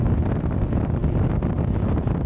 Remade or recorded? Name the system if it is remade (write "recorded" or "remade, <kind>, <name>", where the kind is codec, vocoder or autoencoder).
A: recorded